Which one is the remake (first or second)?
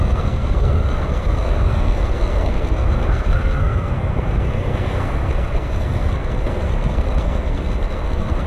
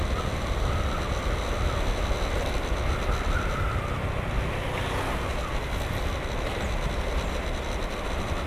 first